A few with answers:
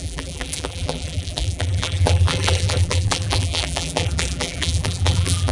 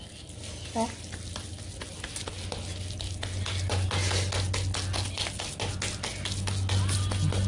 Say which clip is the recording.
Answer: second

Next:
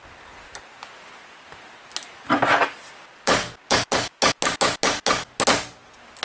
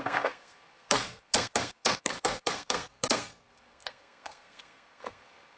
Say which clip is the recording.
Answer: first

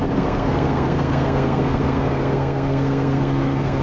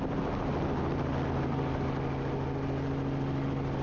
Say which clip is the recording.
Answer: second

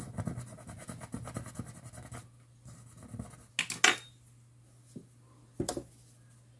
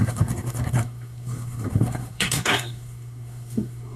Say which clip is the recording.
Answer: first